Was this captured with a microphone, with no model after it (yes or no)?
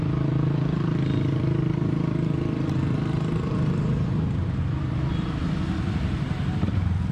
no